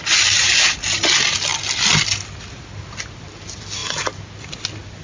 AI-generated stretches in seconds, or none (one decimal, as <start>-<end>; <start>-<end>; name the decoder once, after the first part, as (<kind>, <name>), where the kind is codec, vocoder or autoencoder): none

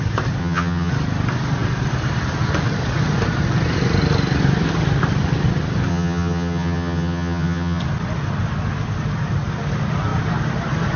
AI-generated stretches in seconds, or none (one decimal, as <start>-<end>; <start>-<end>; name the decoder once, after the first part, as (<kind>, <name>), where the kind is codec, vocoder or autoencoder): 0.4-0.9 (vocoder, HiFi-GAN); 5.9-7.8

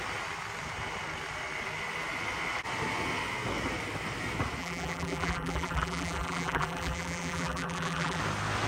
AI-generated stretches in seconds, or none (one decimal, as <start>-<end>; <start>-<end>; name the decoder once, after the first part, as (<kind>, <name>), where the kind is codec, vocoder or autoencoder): 4.6-8.2 (vocoder, BigVGAN v2)

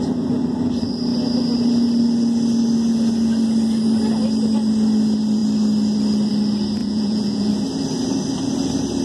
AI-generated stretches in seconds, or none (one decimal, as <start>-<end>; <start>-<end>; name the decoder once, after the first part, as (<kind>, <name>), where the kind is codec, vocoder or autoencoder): 6.8-7.5 (vocoder, Vocos)

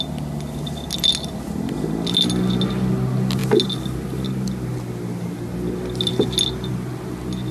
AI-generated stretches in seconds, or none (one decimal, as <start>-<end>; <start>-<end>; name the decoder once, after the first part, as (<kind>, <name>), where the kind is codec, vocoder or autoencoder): none

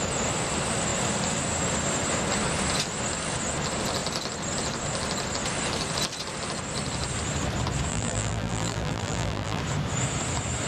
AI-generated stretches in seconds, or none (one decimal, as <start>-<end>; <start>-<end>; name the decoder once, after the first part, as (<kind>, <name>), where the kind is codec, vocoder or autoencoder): 7.9-9.6 (vocoder, BigVGAN v2)

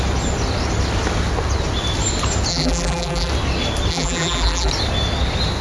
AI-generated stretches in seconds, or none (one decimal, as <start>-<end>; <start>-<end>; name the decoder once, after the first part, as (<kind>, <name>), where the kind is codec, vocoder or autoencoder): 2.5-3.3 (vocoder, BigVGAN v2); 3.9-4.7